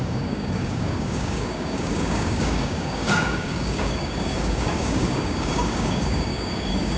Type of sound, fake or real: fake